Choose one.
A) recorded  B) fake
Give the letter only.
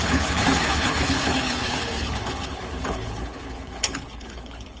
B